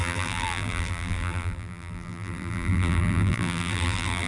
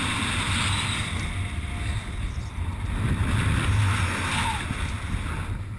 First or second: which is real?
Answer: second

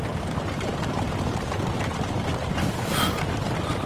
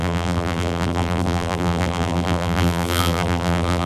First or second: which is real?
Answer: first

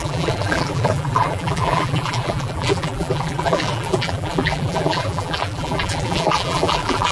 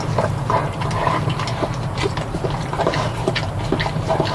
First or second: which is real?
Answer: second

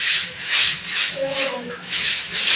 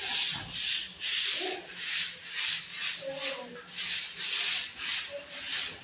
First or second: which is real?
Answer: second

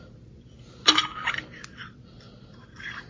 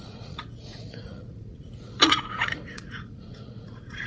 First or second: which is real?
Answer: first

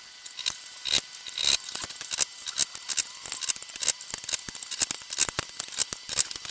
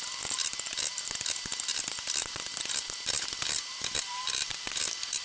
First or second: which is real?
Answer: first